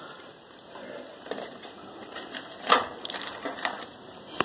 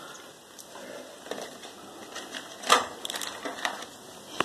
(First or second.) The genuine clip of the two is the second